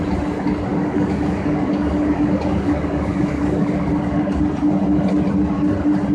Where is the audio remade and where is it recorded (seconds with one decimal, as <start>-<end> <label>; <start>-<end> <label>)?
0.0-0.7 recorded; 0.7-4.4 remade; 4.4-6.1 recorded